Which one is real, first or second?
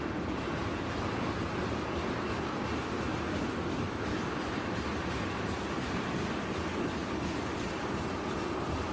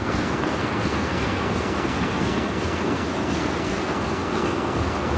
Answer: first